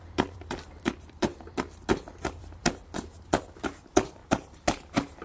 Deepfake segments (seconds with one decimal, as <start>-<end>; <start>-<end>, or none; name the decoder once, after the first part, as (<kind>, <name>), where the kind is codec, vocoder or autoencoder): 0.0-4.2 (vocoder, BigVGAN v2)